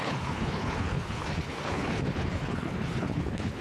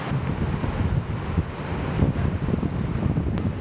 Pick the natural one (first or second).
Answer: second